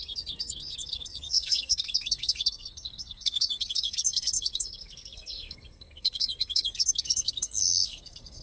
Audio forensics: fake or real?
fake